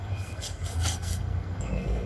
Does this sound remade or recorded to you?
remade